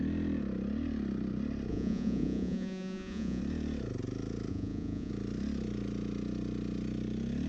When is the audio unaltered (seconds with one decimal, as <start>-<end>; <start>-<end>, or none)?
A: 0.0-1.7; 3.4-4.5; 5.1-7.5